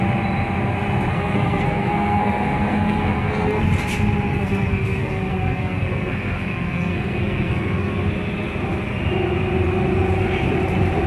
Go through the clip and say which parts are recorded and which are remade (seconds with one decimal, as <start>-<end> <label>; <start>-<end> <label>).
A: 0.0-1.1 recorded; 1.1-3.6 remade; 3.6-4.3 recorded; 4.3-7.9 remade; 7.9-11.1 recorded